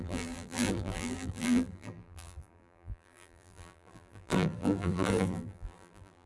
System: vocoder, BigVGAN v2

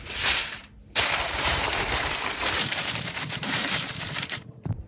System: vocoder, BigVGAN v2